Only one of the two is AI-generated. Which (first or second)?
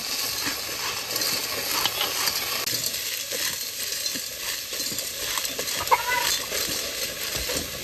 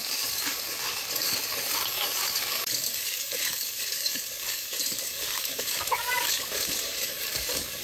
second